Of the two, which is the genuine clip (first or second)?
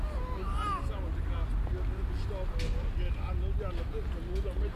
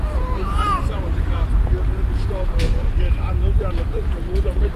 first